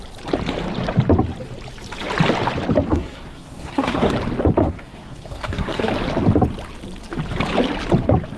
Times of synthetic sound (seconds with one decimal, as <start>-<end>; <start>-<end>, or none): 2.9-4.1; 4.6-5.9